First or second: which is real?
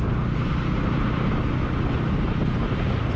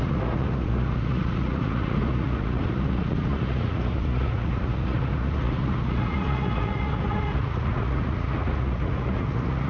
first